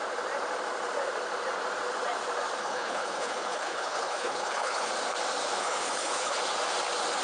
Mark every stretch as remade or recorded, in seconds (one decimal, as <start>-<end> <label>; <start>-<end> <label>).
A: 0.0-2.6 recorded; 2.6-4.9 remade; 4.9-5.6 recorded; 5.6-6.4 remade; 6.4-7.2 recorded